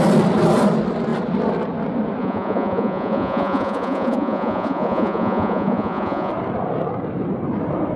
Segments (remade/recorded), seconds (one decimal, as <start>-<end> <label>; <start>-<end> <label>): 0.0-2.2 recorded; 2.2-6.3 remade; 6.3-8.0 recorded